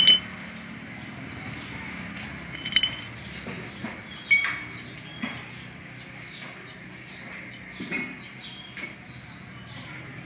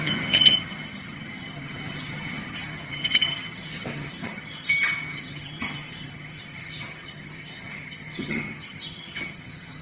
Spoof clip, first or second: second